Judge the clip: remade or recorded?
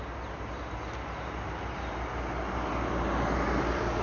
recorded